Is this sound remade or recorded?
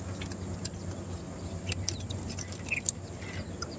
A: recorded